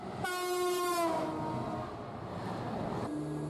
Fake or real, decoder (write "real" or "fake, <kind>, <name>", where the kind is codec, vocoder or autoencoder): real